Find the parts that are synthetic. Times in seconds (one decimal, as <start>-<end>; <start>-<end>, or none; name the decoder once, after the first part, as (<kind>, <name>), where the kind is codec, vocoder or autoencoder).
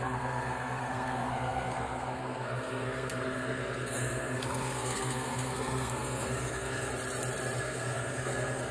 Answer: 0.0-6.9 (codec, SNAC); 7.6-8.7